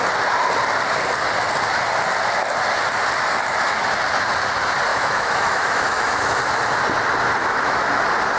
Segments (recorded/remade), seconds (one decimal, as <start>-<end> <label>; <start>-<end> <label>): 0.0-4.9 recorded; 4.9-6.4 remade; 6.4-7.4 recorded; 7.4-8.0 remade; 8.0-8.4 recorded